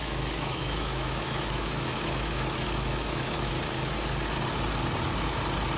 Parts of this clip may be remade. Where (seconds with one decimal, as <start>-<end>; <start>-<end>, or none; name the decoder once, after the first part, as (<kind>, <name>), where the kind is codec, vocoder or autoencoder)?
0.0-3.5 (autoencoder, DAC-VAE)